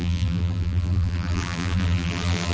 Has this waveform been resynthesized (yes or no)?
yes